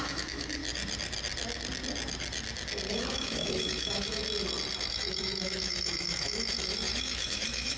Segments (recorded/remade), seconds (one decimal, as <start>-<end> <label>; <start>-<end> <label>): 0.0-0.6 remade; 0.6-2.9 recorded; 2.9-4.2 remade; 4.2-4.9 recorded; 4.9-7.8 remade